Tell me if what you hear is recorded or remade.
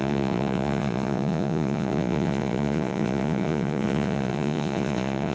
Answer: remade